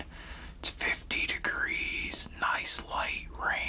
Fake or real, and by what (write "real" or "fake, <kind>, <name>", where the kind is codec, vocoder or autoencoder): real